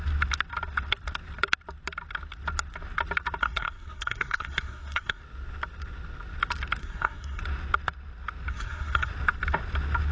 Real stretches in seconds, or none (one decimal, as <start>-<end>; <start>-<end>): 0.0-3.4; 5.2-6.8; 7.4-8.5; 9.1-10.1